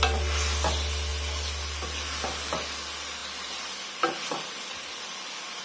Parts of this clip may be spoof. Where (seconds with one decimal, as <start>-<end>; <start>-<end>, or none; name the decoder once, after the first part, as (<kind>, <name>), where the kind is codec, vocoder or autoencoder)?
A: none